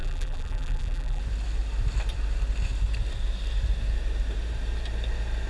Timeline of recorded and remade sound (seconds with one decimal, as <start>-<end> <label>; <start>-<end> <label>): 0.0-1.2 remade; 1.2-5.5 recorded